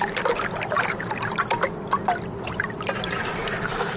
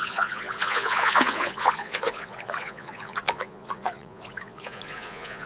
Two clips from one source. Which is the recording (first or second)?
first